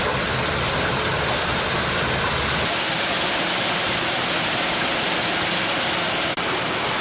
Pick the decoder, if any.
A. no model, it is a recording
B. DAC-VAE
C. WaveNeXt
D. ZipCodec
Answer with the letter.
A